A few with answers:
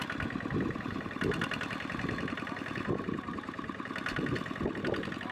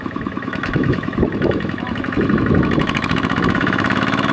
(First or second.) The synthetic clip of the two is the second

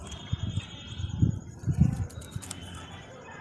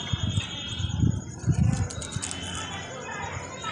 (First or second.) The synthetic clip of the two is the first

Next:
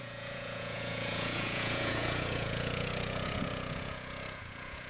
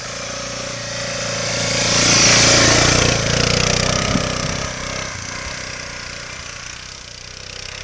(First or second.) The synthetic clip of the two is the first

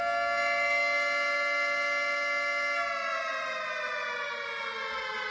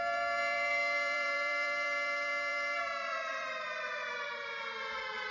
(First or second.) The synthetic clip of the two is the second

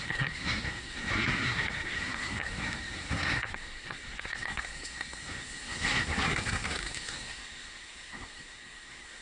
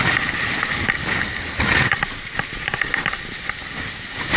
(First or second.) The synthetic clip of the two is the first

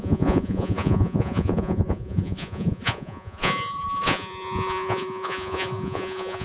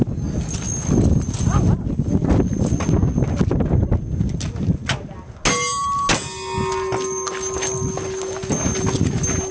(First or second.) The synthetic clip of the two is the first